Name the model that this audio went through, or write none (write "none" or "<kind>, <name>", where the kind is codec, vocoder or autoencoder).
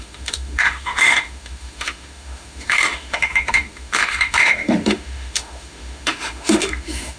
autoencoder, DAC-VAE